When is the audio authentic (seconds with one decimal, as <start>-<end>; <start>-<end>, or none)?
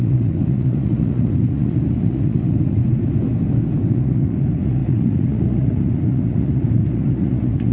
2.8-3.9